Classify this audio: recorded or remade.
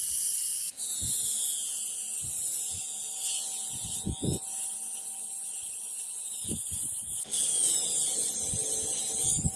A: recorded